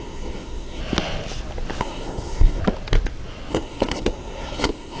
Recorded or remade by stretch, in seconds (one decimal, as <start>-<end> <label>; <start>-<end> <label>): 0.0-0.8 remade; 0.8-1.8 recorded; 1.8-2.6 remade; 2.6-3.5 recorded; 3.5-5.0 remade